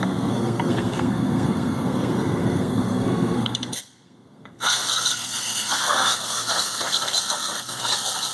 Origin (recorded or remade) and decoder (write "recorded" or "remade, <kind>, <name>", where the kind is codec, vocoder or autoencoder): remade, codec, SNAC